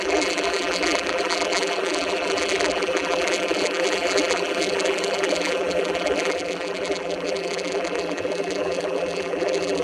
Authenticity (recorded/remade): remade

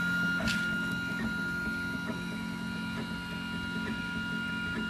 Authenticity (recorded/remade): recorded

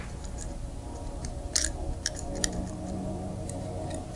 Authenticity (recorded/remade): remade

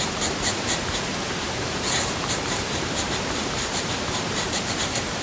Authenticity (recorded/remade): remade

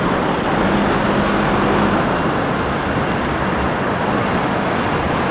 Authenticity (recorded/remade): recorded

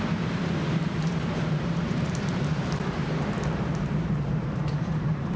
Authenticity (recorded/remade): remade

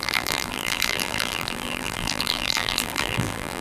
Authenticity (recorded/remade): remade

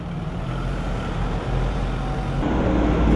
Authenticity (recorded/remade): recorded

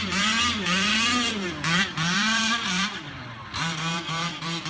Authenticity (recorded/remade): remade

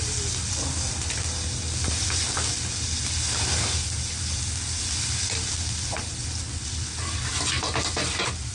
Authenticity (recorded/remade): recorded